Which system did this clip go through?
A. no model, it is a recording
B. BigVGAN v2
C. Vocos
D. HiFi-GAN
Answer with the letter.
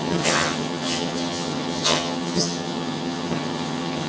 D